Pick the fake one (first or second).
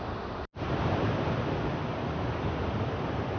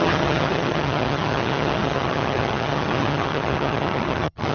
second